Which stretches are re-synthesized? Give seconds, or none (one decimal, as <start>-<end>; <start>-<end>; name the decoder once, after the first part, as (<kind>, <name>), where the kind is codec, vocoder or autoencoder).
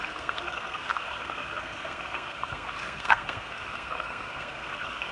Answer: 0.0-5.1 (codec, SNAC)